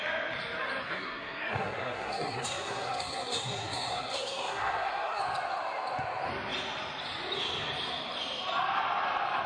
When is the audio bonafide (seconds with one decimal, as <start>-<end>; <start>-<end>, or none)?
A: 0.0-0.8; 5.2-9.5